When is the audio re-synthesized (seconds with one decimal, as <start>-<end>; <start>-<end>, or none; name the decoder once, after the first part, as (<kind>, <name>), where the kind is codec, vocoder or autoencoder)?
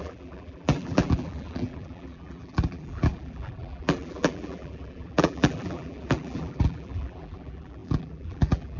0.0-8.8 (vocoder, BigVGAN v2)